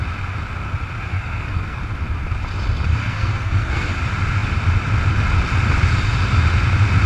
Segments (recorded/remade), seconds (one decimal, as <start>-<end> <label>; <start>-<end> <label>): 0.0-1.1 recorded; 1.1-1.8 remade; 1.8-3.0 recorded; 3.0-3.9 remade; 3.9-7.1 recorded